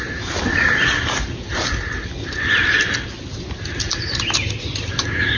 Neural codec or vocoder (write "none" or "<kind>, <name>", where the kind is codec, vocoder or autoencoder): none